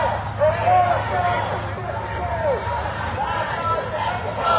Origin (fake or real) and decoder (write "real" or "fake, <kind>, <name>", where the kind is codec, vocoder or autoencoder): real